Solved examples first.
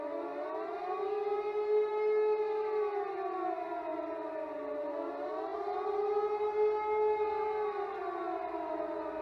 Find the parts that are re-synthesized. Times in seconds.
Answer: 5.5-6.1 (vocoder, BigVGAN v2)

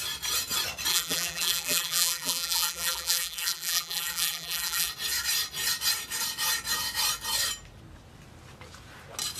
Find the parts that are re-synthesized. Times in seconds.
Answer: 0.9-4.9 (vocoder, BigVGAN v2)